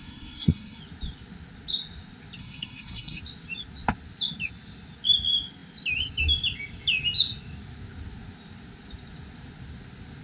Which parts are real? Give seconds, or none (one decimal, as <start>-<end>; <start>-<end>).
0.8-2.4; 3.2-10.2